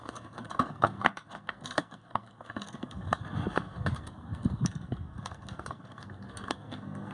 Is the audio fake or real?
fake